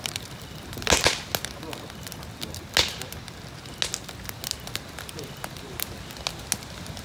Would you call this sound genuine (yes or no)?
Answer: yes